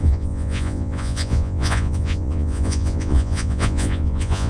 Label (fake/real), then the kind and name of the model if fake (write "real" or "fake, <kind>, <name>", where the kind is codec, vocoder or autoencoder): fake, vocoder, Vocos